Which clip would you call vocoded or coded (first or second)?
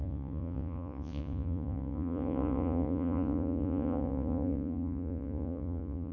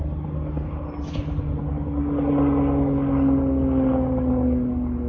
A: first